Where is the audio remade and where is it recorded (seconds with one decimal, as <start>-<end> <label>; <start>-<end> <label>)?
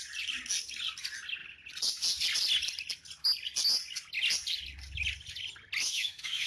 0.0-5.8 recorded; 5.8-6.5 remade